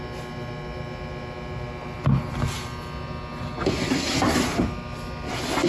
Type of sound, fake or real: real